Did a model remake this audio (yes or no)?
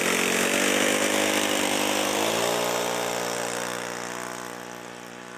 no